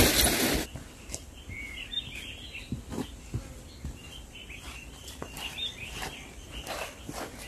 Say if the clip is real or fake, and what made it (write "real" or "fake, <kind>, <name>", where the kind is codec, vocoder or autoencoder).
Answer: real